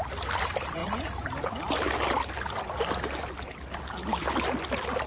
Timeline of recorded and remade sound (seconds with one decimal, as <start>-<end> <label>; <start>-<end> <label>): 0.0-5.1 recorded